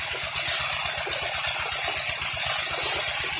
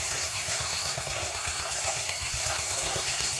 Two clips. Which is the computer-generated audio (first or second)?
second